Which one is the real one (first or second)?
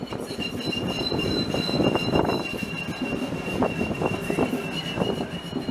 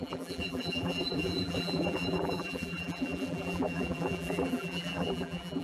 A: first